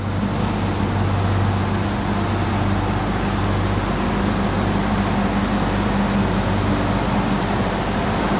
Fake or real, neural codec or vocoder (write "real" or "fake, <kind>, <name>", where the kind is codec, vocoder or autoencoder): real